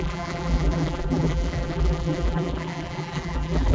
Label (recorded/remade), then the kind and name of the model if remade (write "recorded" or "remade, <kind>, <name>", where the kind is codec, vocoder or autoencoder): remade, vocoder, BigVGAN v2